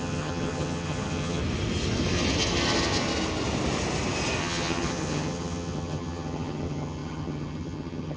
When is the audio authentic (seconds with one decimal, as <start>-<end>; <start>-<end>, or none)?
1.4-4.4